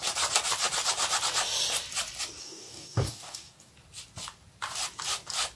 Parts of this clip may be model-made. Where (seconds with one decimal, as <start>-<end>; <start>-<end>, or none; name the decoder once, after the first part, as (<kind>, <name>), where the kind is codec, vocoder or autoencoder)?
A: 2.4-3.7 (codec, DAC)